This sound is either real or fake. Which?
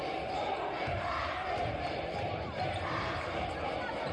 fake